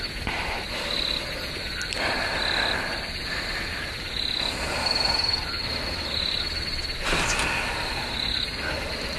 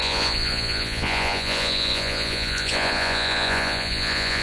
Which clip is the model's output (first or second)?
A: second